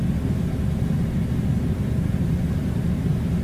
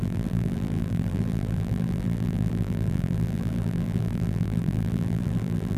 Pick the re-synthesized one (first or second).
second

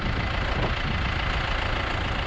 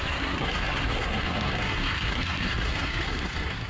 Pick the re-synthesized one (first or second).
second